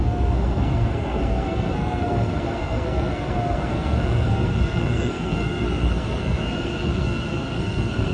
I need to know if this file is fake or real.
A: fake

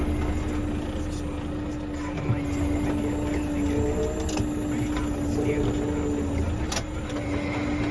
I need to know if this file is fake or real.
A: real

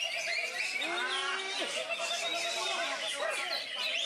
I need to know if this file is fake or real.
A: real